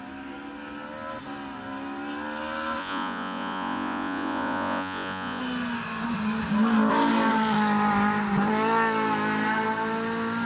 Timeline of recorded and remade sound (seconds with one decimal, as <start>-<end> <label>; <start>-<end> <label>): 0.0-2.8 recorded; 2.8-5.4 remade; 5.4-10.5 recorded